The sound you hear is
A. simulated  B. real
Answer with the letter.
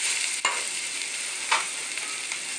B